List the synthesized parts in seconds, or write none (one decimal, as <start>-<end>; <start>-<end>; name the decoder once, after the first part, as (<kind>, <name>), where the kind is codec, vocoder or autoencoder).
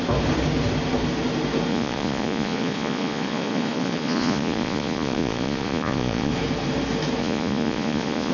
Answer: 1.7-6.3 (vocoder, Vocos); 7.2-8.3